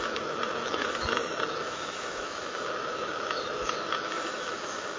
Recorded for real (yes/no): no